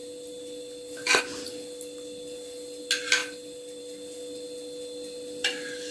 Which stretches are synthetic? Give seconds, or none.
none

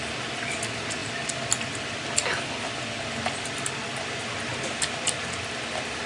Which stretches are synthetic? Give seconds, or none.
none

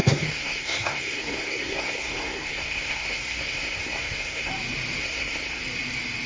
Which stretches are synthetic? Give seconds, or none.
0.0-4.5; 5.0-5.6

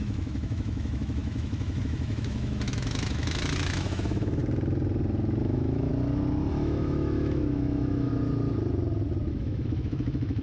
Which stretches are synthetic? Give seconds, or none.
0.0-4.4; 5.4-5.9; 6.5-8.1; 9.3-10.4

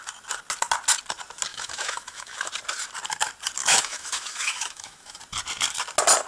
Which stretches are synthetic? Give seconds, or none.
1.5-2.5; 3.6-5.2